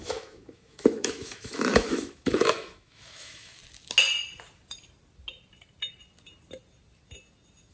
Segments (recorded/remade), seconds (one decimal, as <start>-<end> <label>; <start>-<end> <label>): 0.0-3.6 remade; 3.6-7.7 recorded